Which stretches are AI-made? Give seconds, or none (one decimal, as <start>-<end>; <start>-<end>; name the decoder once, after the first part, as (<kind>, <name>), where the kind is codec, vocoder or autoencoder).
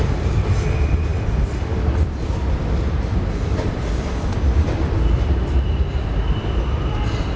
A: none